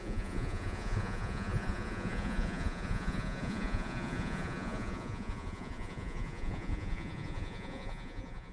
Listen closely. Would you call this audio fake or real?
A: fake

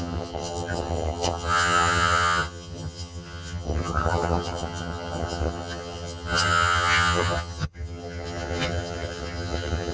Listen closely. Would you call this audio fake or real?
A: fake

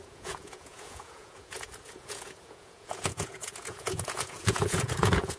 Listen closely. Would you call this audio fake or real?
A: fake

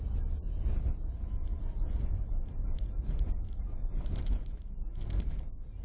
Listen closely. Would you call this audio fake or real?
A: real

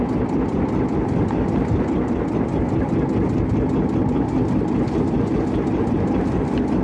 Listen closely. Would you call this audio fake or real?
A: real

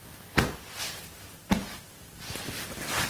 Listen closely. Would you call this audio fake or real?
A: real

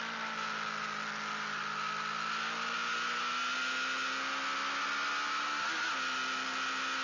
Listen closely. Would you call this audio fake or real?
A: real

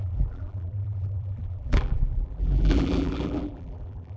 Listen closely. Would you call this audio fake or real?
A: fake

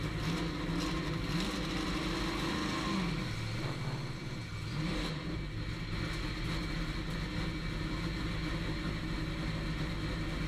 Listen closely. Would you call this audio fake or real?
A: real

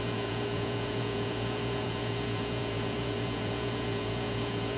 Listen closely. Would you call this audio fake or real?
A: fake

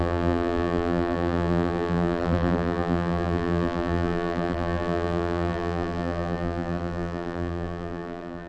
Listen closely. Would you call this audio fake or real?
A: fake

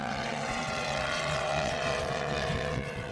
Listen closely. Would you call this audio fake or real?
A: fake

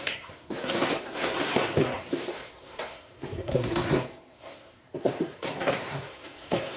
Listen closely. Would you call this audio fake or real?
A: fake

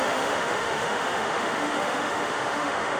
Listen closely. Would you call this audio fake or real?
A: fake